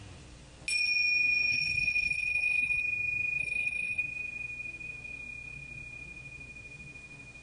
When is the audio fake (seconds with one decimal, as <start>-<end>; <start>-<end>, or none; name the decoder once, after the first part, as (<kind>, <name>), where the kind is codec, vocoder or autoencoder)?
1.5-2.8 (codec, HILCodec); 3.4-4.0